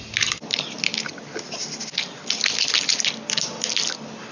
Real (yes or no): yes